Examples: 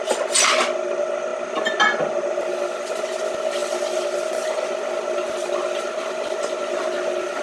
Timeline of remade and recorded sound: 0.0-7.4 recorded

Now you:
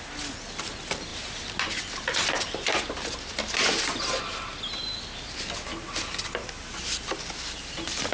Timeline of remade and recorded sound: 0.0-8.1 recorded

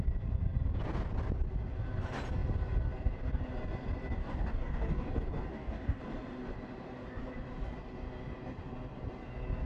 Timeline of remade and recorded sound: 0.0-4.2 recorded; 4.2-5.1 remade; 5.1-5.5 recorded; 5.5-6.0 remade; 6.0-9.7 recorded

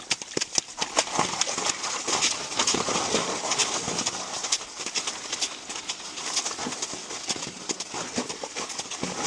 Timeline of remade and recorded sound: 0.0-9.3 recorded